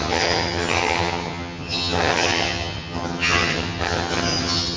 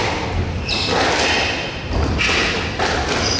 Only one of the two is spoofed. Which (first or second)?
first